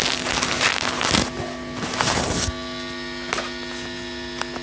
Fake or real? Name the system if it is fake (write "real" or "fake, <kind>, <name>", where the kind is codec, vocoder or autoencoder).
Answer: real